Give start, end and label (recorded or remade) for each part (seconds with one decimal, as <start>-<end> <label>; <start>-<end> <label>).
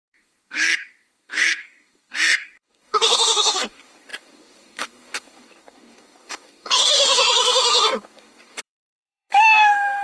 0.0-10.0 remade